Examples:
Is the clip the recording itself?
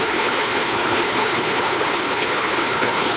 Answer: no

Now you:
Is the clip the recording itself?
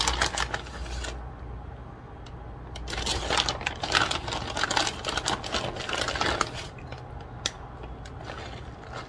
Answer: yes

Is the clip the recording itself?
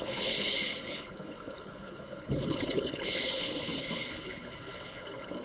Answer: no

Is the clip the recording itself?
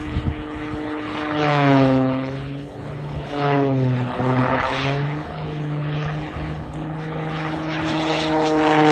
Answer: no